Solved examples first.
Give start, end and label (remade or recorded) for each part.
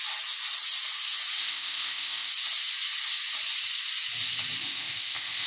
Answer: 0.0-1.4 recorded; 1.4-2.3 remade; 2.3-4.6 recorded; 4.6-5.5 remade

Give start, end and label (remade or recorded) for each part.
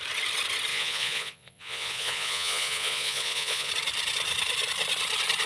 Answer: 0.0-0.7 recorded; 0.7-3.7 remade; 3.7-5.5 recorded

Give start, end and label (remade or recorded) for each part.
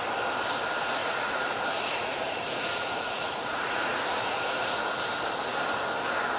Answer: 0.0-1.0 recorded; 1.0-4.8 remade; 4.8-6.4 recorded